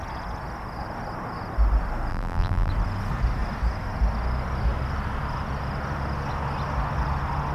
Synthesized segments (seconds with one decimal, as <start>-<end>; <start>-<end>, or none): 2.1-2.7